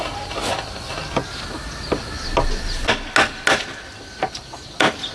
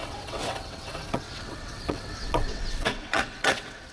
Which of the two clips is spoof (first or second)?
second